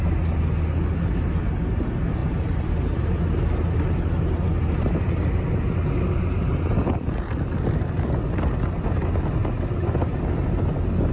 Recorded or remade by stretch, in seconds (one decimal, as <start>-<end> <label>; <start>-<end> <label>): 0.0-11.1 recorded